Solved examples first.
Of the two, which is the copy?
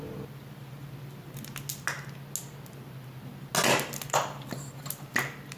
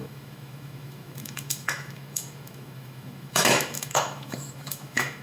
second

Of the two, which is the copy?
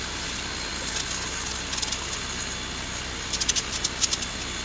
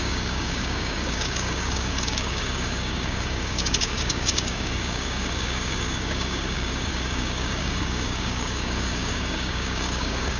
second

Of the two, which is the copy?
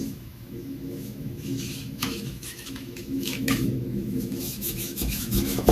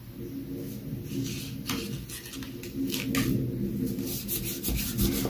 first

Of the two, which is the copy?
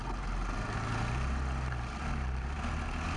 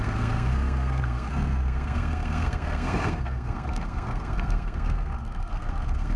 second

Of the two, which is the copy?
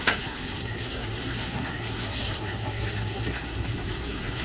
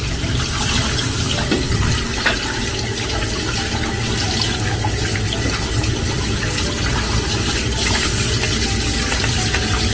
first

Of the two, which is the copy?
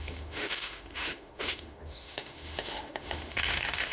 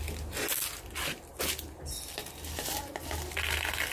first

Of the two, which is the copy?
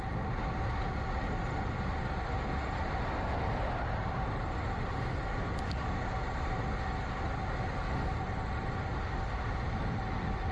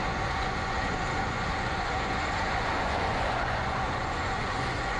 second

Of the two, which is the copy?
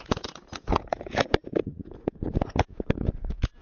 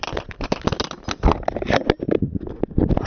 first